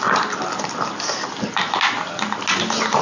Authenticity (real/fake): real